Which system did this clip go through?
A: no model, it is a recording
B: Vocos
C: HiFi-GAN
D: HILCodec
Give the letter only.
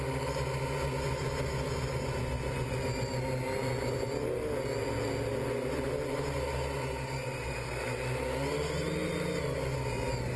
A